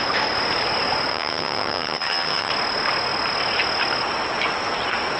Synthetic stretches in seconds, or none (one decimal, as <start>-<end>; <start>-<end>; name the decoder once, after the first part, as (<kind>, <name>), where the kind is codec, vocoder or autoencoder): 1.1-2.5 (vocoder, HiFi-GAN)